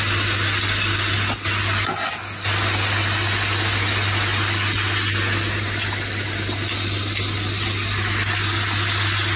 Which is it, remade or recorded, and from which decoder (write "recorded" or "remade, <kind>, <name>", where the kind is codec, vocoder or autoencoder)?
recorded